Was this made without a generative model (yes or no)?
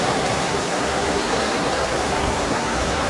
no